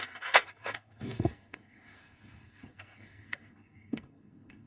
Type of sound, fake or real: fake